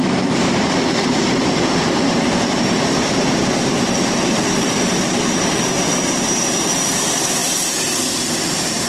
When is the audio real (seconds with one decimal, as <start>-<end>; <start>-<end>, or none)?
none

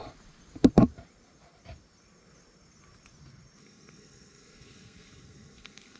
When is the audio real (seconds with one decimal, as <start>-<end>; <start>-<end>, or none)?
0.0-3.6

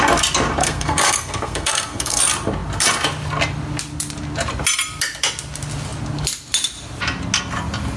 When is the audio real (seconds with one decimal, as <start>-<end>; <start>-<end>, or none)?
0.0-0.6; 2.2-8.0

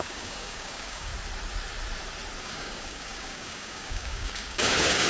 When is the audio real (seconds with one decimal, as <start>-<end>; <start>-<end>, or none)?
1.1-2.4

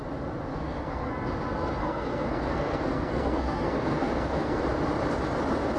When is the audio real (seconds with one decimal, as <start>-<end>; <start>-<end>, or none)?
0.0-0.5; 1.1-1.8; 4.6-5.8